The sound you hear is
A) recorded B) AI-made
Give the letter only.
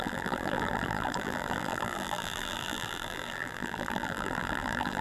B